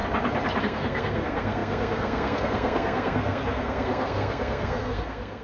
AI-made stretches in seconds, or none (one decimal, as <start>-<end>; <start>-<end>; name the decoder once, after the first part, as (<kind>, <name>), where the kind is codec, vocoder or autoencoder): 0.6-5.4 (codec, SNAC)